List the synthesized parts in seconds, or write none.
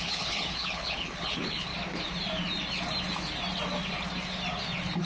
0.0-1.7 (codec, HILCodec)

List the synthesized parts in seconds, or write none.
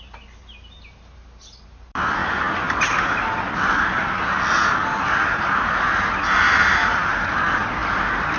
none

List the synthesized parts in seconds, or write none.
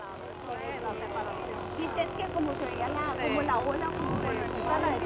none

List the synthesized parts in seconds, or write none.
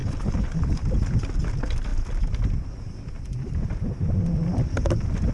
0.0-0.8 (codec, HILCodec)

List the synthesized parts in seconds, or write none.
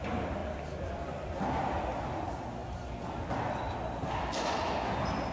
none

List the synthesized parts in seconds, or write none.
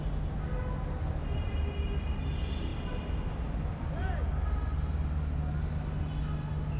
none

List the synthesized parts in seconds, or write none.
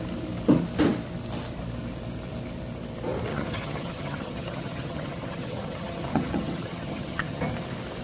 3.3-7.4 (vocoder, HiFi-GAN)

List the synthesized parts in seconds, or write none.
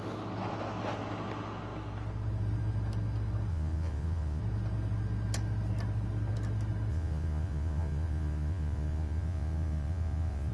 3.5-4.4 (vocoder, Vocos); 6.9-10.5